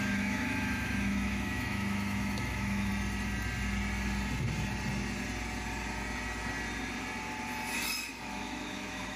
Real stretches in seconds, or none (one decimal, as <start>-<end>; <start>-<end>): 2.9-8.1